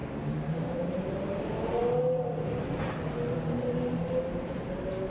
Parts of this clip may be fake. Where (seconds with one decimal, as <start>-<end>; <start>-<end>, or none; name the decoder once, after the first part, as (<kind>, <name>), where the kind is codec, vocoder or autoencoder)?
0.0-0.9 (codec, DAC)